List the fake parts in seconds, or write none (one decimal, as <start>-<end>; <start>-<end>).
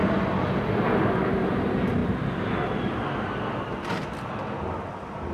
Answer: none